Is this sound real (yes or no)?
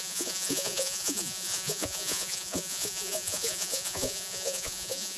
no